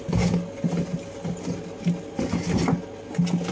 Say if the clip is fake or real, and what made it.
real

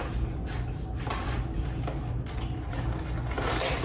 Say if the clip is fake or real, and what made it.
real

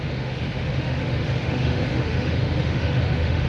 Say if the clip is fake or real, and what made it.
fake, autoencoder, DAC-VAE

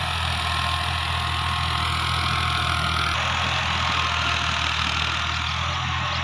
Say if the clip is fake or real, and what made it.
real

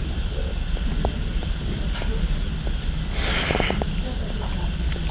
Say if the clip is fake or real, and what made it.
real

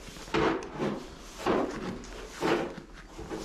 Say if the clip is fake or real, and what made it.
real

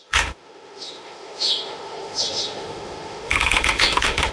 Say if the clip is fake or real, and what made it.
fake, autoencoder, DAC-VAE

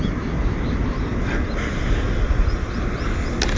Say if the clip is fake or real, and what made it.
real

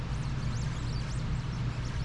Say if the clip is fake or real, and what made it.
real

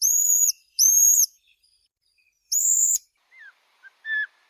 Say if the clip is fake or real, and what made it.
fake, vocoder, BigVGAN v2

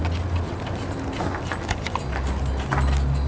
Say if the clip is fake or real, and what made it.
real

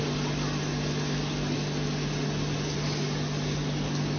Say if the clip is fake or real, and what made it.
real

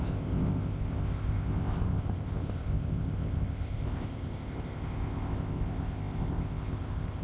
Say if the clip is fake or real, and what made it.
fake, codec, ZipCodec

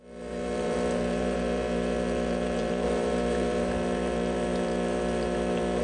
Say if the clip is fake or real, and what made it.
fake, vocoder, BigVGAN v2